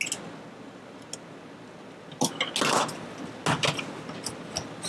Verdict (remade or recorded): recorded